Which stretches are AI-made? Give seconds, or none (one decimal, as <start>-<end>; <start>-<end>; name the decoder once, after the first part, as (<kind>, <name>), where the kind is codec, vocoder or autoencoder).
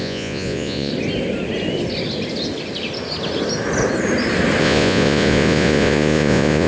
0.0-0.9 (vocoder, Vocos); 4.6-6.7